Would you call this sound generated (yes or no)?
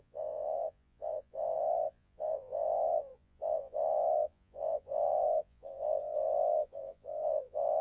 yes